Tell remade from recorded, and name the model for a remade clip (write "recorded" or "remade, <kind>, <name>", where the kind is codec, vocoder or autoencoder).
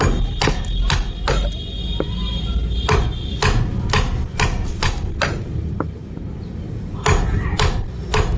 recorded